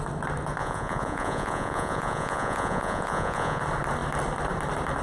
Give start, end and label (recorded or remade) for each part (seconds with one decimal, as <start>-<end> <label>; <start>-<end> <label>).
0.0-0.6 recorded; 0.6-3.6 remade; 3.6-5.0 recorded